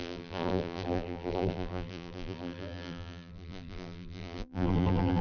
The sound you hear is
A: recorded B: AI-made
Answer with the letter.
B